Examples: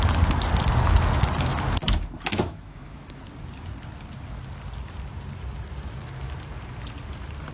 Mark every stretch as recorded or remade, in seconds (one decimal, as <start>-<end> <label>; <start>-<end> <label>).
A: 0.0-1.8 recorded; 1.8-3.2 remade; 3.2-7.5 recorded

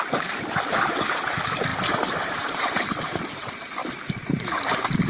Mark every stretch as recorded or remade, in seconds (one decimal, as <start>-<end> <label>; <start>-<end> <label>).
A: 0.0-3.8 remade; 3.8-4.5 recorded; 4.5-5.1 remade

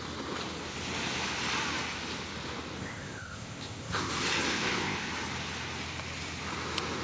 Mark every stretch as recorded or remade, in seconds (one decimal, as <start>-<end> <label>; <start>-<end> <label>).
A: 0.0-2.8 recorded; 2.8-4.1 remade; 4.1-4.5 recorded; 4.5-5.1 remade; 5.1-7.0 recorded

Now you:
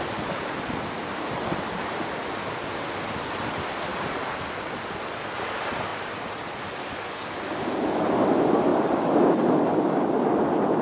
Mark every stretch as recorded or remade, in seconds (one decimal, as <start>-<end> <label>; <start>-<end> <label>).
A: 0.0-3.9 recorded; 3.9-4.5 remade; 4.5-8.7 recorded; 8.7-9.3 remade; 9.3-10.8 recorded

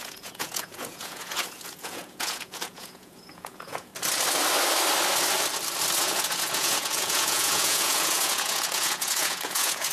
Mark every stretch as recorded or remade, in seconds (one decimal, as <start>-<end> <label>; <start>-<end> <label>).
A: 0.0-3.9 remade; 3.9-6.0 recorded; 6.0-9.9 remade

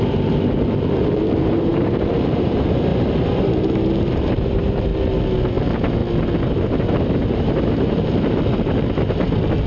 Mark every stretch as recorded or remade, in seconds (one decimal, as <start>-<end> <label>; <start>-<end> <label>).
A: 0.0-4.9 remade; 4.9-5.5 recorded; 5.5-6.0 remade; 6.0-7.0 recorded; 7.0-9.7 remade

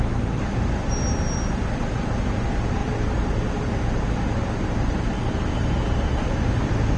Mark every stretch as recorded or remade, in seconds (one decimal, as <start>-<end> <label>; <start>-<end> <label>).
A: 0.0-7.0 recorded

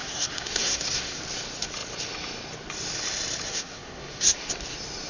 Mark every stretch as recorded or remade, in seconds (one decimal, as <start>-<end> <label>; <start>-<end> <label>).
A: 0.0-1.2 remade; 1.2-3.5 recorded; 3.5-4.5 remade; 4.5-5.1 recorded